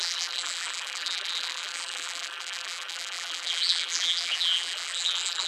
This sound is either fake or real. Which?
fake